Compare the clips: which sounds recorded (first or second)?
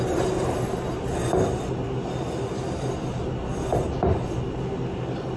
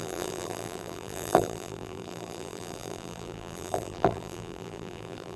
first